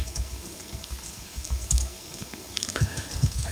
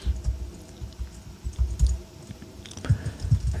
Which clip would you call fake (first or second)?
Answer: first